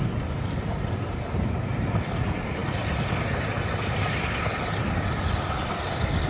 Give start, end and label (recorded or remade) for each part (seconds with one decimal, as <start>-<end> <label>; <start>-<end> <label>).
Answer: 0.0-6.3 recorded